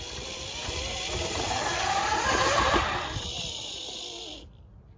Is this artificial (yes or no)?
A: no